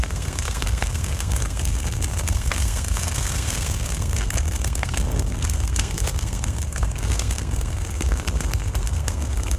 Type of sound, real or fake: fake